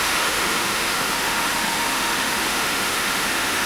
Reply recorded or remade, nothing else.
remade